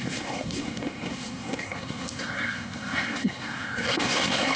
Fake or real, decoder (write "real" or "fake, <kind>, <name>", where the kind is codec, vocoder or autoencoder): fake, codec, SNAC